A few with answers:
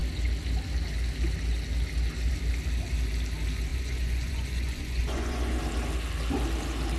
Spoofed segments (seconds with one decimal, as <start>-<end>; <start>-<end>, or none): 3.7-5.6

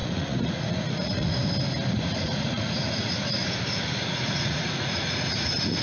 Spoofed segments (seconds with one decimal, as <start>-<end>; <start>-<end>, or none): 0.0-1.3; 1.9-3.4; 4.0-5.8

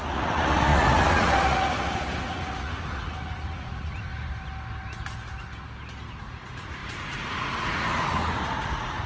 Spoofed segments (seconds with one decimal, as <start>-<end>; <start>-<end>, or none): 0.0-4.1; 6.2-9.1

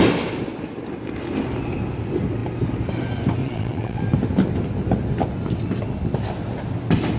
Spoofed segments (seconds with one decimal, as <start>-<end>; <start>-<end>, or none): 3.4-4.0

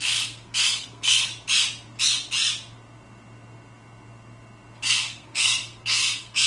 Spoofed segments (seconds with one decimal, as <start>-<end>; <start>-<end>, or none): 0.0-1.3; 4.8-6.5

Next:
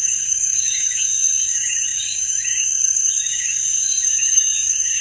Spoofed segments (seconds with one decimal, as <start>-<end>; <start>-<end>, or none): 0.0-5.0

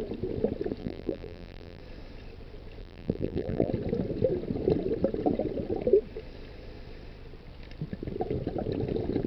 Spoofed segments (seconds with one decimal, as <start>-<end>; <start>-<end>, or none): 0.8-1.8; 2.8-3.7